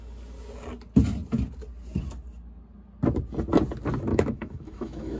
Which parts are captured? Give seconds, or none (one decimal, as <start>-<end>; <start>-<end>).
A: 0.0-4.1